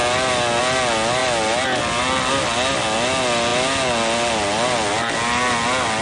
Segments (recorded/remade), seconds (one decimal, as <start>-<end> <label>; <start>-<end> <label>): 0.0-6.0 recorded